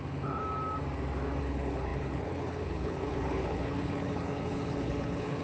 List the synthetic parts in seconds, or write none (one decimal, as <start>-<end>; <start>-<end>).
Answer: 0.0-0.4; 1.4-5.4

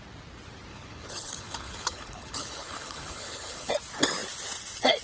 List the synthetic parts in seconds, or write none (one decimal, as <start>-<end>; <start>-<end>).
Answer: 0.7-3.7